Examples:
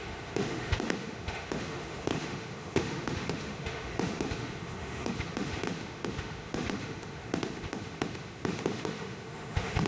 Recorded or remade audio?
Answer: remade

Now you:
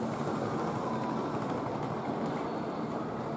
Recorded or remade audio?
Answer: recorded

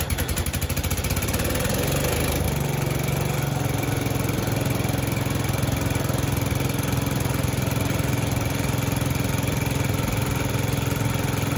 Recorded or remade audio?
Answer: recorded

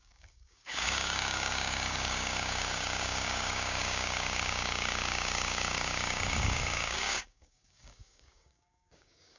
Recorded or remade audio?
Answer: remade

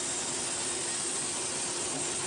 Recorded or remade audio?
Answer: recorded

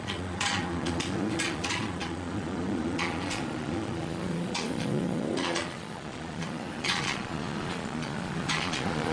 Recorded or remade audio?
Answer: remade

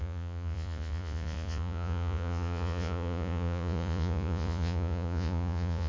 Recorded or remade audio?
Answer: remade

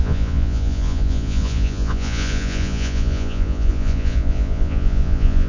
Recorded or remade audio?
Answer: remade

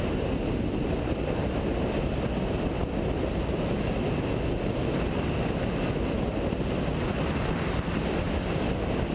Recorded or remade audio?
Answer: recorded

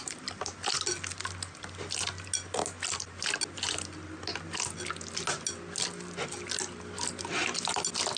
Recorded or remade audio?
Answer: recorded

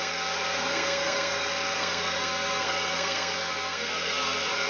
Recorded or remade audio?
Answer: remade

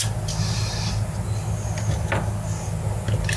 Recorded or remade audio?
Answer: recorded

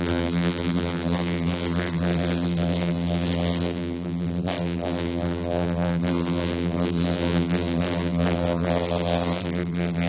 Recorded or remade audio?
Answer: remade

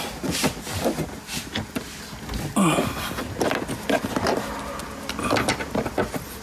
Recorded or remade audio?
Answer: recorded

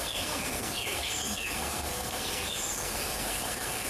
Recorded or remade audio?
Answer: remade